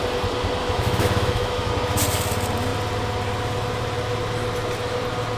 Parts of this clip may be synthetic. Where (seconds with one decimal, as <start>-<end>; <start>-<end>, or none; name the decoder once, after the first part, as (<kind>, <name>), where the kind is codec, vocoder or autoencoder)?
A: 0.6-1.7 (autoencoder, DAC-VAE)